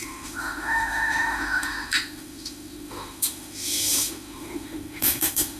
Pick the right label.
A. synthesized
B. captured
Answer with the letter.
A